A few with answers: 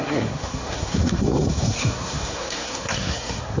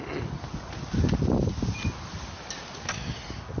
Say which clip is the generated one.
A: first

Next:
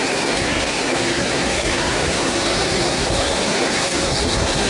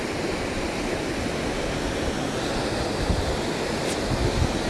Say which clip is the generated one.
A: first